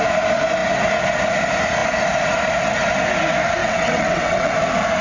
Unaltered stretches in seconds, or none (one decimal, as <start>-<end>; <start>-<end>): 0.0-3.6; 4.5-5.0